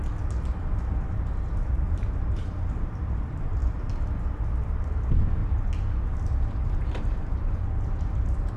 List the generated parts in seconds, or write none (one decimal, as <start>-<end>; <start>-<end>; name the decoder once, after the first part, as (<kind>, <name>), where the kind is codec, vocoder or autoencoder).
1.1-3.6 (vocoder, BigVGAN v2); 4.2-5.4; 6.1-8.6